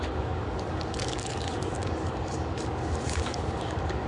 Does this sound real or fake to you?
fake